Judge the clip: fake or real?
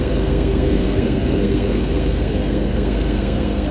fake